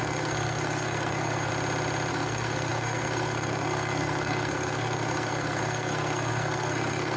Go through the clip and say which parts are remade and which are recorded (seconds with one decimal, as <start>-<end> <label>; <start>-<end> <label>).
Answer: 0.0-1.5 remade; 1.5-2.1 recorded; 2.1-7.2 remade